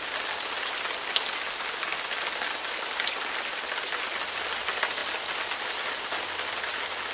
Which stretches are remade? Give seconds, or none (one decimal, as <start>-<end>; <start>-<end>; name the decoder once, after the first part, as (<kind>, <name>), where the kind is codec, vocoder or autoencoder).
none